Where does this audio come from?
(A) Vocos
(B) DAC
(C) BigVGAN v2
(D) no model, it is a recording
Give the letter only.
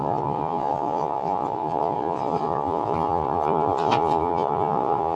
A